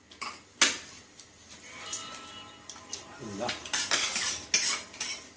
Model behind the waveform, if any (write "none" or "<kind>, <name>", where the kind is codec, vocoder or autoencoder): none